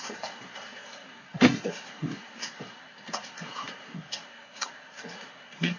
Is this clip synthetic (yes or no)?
yes